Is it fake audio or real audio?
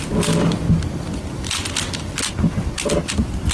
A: real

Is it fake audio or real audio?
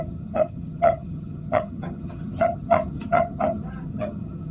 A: fake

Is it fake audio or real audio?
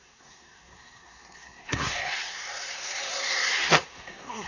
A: fake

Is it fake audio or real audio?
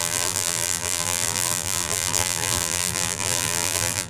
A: fake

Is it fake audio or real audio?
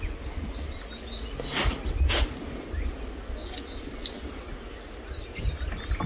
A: real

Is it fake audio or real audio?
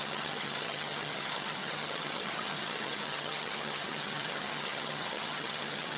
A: fake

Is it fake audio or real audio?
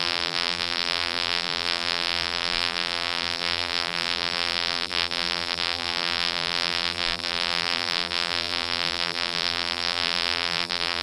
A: fake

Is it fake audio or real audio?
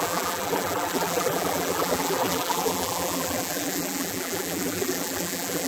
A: fake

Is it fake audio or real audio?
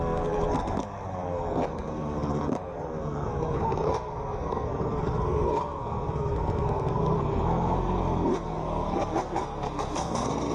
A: fake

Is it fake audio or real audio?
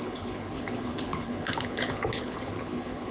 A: fake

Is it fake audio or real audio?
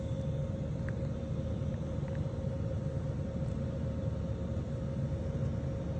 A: real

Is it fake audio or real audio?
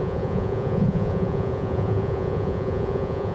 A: fake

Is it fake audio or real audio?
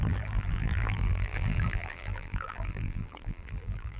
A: fake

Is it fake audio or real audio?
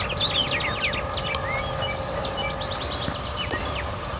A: real